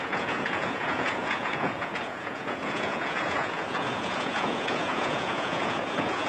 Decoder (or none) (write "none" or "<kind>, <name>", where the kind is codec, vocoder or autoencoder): vocoder, Vocos